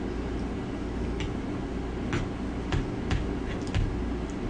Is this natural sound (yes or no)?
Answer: yes